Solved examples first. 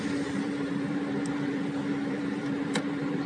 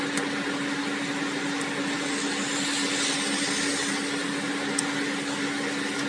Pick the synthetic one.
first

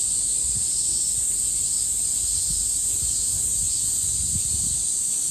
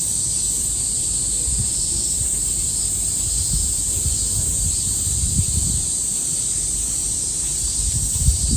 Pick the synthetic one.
second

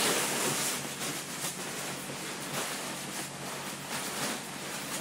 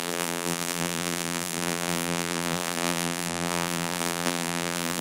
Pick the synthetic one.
second